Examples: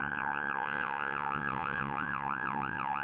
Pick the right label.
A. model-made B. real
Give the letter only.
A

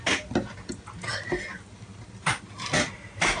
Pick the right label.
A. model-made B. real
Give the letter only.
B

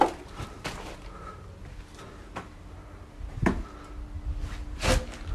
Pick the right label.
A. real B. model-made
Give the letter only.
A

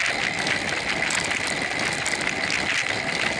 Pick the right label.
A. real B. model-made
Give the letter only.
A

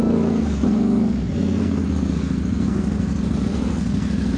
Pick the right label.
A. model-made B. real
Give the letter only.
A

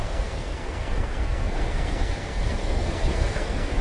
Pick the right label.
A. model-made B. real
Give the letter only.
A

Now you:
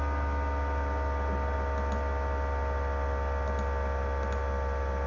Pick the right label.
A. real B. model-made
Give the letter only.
A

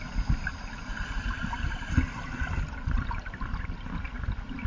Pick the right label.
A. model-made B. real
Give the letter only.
B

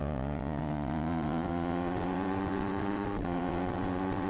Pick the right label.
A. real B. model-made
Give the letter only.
B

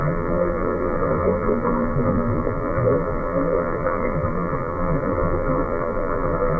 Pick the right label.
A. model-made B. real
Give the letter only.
A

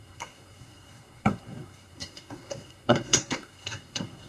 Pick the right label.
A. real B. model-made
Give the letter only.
B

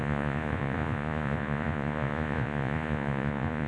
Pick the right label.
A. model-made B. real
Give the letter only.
A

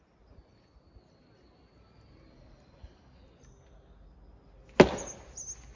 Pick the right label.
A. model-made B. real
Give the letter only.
B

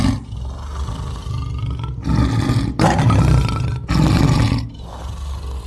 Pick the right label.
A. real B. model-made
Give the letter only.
A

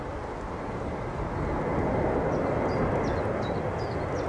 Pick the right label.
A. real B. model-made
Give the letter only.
A